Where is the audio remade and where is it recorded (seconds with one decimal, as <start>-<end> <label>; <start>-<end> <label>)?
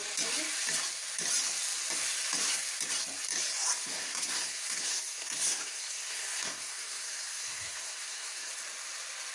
0.0-3.8 recorded; 3.8-8.5 remade; 8.5-9.3 recorded